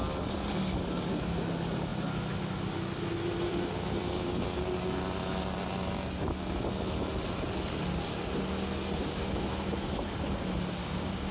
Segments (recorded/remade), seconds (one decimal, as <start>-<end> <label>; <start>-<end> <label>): 0.0-10.8 recorded; 10.8-11.3 remade